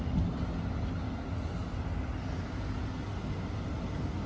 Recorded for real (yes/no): yes